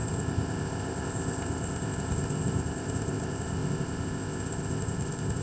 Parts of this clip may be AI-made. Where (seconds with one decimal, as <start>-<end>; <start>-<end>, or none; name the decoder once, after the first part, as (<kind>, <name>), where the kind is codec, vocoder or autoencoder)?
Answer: 0.0-5.4 (codec, ZipCodec)